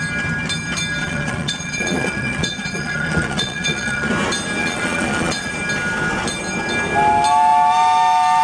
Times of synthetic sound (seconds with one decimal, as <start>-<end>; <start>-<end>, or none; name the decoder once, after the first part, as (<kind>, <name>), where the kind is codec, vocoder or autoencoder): 1.0-4.1 (vocoder, Vocos); 4.6-5.5